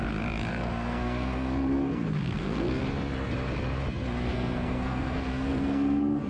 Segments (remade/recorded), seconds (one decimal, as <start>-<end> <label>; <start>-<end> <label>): 0.0-0.5 recorded; 0.5-2.8 remade; 2.8-4.3 recorded; 4.3-6.3 remade